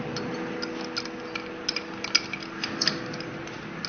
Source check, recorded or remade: recorded